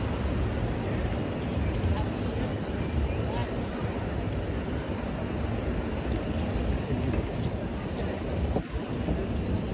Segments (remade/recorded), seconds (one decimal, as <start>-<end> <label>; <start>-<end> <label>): 0.0-9.7 recorded